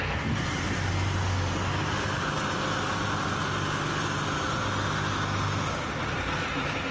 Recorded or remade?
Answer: recorded